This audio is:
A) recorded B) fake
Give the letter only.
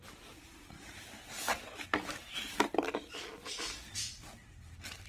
A